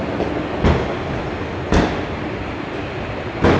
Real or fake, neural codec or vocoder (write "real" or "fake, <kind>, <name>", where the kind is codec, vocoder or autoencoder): real